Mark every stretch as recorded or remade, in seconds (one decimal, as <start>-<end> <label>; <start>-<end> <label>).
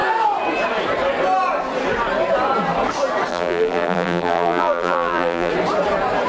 0.0-3.3 recorded; 3.3-5.5 remade; 5.5-6.3 recorded